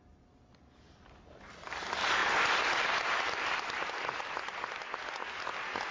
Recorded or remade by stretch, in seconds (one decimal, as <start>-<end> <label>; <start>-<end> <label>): 0.0-5.9 recorded

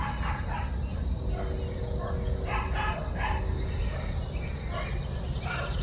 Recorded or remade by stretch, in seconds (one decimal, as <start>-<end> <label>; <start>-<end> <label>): 0.0-5.8 recorded

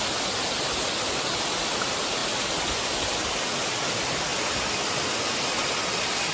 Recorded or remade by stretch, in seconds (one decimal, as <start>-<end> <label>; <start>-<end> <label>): 0.0-6.3 recorded

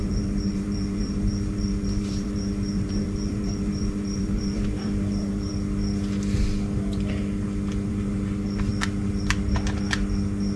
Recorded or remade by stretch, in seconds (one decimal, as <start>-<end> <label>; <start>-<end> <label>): 0.0-5.5 remade; 5.5-7.9 recorded; 7.9-8.7 remade; 8.7-10.6 recorded

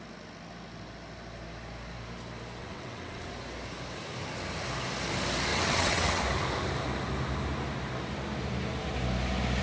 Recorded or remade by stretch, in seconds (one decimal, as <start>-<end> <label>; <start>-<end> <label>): 0.0-2.6 recorded; 2.6-3.3 remade; 3.3-5.5 recorded; 5.5-6.2 remade; 6.2-9.6 recorded

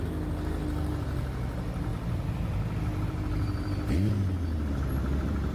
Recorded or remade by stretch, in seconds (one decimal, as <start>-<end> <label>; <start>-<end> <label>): 0.0-5.5 recorded